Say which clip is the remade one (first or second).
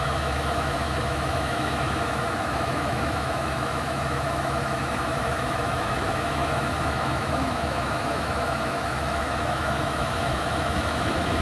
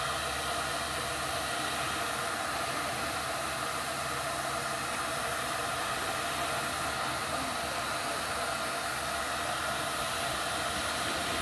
first